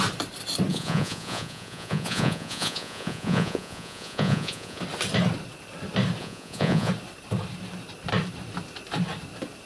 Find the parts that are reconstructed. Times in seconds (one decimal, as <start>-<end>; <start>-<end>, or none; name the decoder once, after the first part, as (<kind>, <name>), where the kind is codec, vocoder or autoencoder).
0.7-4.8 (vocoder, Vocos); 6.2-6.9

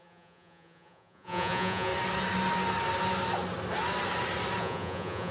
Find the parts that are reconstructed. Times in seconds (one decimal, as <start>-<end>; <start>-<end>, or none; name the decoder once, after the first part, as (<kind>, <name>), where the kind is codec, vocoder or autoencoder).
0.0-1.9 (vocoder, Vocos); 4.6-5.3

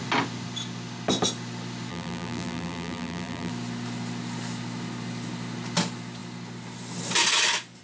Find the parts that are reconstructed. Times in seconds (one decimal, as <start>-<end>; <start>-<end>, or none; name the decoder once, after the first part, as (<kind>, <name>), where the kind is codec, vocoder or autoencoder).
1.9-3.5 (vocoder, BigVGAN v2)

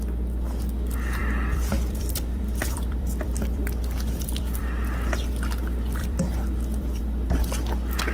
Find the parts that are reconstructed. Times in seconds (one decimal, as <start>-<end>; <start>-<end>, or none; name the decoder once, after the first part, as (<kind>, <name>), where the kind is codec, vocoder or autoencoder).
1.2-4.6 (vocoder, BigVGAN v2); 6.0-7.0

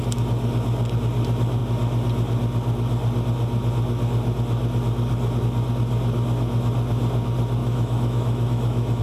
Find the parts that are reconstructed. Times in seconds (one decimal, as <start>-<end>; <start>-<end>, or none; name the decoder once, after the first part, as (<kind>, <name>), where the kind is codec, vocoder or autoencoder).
7.6-9.0 (autoencoder, DAC-VAE)